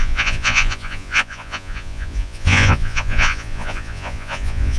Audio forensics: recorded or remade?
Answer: remade